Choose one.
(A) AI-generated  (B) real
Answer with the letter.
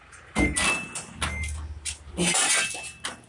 B